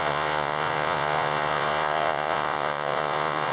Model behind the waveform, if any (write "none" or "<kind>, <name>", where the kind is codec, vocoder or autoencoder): vocoder, Vocos